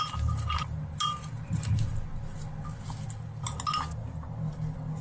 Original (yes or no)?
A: yes